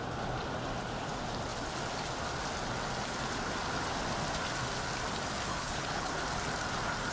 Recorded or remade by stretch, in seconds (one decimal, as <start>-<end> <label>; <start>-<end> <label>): 0.0-5.5 recorded; 5.5-6.1 remade; 6.1-7.1 recorded